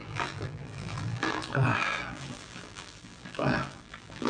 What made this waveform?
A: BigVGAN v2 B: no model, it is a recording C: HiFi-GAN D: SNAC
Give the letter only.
A